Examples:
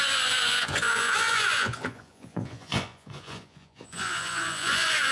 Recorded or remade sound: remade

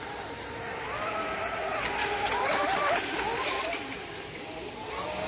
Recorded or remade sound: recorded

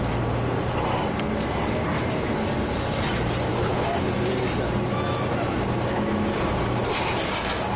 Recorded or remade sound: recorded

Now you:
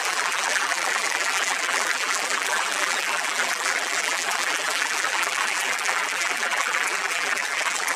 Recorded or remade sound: remade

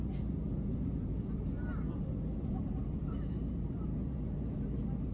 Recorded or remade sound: recorded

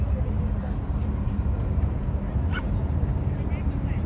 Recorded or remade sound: remade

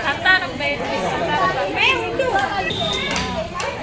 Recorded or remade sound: remade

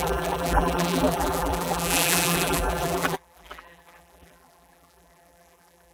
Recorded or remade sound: remade